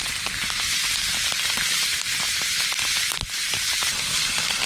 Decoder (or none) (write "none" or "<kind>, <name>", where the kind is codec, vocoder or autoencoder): none